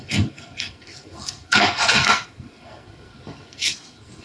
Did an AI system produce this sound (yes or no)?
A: yes